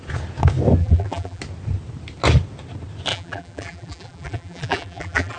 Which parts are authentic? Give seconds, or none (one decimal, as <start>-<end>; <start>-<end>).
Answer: 0.0-0.8; 1.4-3.1